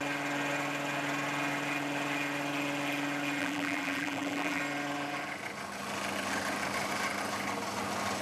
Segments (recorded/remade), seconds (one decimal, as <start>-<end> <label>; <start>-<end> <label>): 0.0-3.4 recorded; 3.4-4.6 remade; 4.6-8.2 recorded